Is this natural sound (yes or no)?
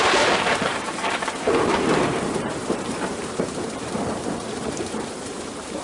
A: no